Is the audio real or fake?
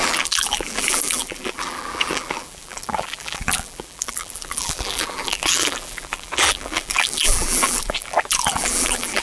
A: fake